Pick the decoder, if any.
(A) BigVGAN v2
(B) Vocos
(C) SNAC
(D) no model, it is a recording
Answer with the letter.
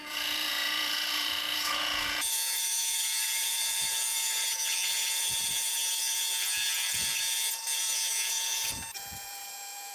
B